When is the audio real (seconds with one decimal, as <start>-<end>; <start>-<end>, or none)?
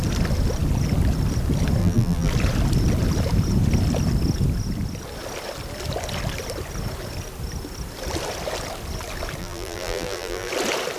0.0-1.8; 2.3-9.4; 10.5-11.0